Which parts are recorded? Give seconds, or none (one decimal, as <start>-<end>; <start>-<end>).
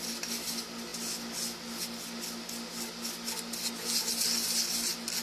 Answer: 0.0-5.2